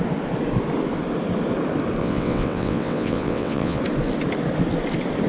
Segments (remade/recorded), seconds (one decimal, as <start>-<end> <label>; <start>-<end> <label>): 0.0-2.0 recorded; 2.0-3.8 remade; 3.8-5.3 recorded